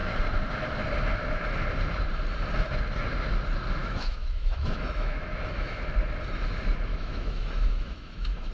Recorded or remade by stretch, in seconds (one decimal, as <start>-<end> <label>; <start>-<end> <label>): 0.0-3.8 recorded; 3.8-5.8 remade; 5.8-6.9 recorded; 6.9-8.5 remade